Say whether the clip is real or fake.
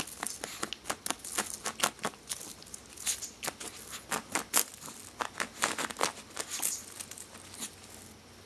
real